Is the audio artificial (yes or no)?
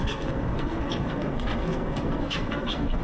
yes